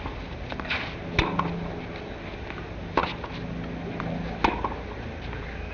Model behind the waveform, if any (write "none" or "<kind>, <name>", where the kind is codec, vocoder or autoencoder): none